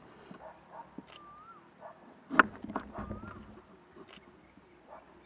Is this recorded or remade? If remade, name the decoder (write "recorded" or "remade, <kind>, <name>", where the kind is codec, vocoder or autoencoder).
recorded